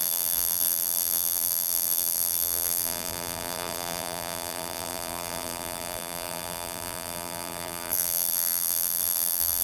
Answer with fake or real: fake